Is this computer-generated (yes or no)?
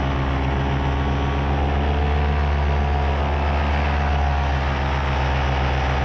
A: no